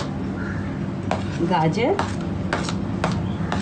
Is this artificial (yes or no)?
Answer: no